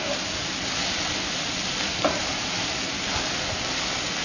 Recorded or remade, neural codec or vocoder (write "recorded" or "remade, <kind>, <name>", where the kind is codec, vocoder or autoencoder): recorded